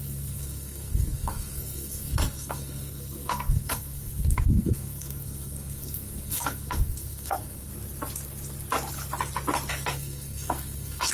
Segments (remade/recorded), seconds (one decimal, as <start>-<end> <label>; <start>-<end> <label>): 0.0-7.7 remade; 7.7-9.7 recorded; 9.7-11.1 remade